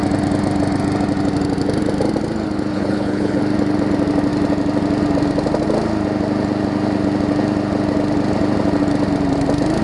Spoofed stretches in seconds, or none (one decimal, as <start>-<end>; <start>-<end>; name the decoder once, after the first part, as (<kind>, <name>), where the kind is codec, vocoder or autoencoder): 2.7-3.4 (codec, HILCodec)